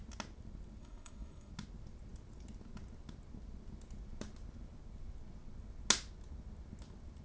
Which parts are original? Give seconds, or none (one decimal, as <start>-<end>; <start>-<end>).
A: 0.0-0.8; 1.5-7.2